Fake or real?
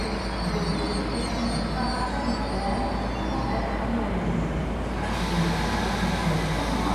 real